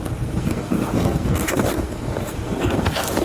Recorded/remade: remade